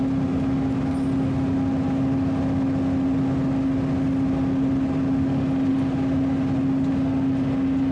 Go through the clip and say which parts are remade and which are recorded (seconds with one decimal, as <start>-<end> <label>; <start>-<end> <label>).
0.0-7.9 recorded